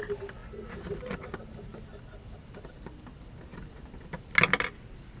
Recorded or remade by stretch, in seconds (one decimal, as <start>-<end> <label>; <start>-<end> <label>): 0.0-5.2 recorded